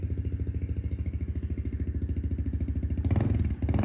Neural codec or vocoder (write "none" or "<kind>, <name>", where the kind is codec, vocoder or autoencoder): none